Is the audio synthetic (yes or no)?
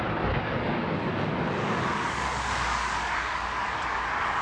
yes